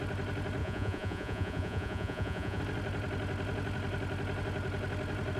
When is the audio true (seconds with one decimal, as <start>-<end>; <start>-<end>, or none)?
0.0-0.6; 2.6-5.4